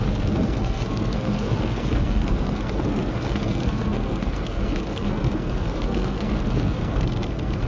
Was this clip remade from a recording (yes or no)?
yes